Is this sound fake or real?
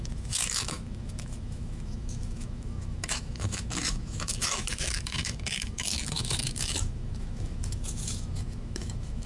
fake